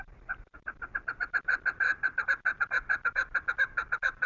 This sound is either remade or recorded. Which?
recorded